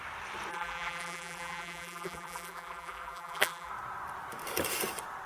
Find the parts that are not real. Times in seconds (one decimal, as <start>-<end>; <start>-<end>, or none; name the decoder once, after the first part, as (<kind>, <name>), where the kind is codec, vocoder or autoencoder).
0.5-3.7 (vocoder, BigVGAN v2)